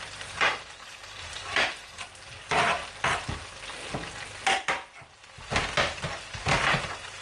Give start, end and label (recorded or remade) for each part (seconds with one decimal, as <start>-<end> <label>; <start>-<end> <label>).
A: 0.0-2.8 remade; 2.8-6.2 recorded; 6.2-7.2 remade